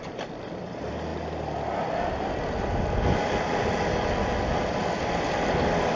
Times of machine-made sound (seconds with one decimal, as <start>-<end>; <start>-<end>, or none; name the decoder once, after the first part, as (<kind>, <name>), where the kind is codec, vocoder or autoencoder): none